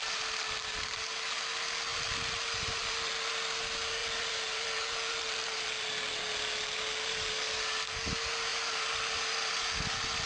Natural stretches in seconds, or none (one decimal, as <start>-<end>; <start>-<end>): 0.0-1.9; 3.3-4.0; 7.3-8.5; 9.5-10.3